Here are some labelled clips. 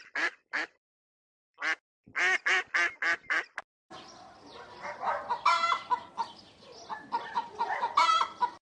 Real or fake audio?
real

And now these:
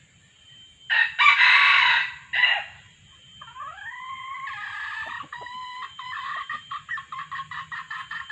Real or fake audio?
real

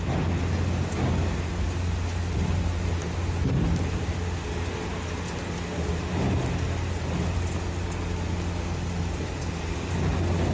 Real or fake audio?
real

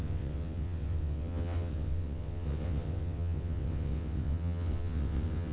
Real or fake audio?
fake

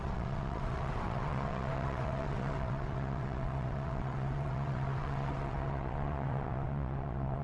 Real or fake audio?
fake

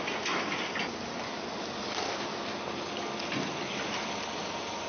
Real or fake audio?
real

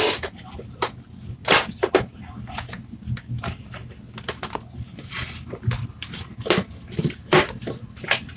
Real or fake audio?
real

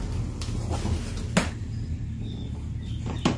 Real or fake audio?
real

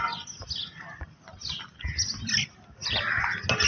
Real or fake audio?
real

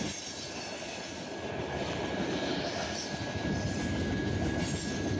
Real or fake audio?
real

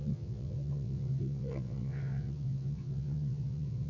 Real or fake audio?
fake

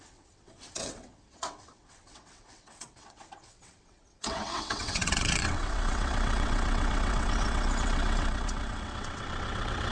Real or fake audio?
fake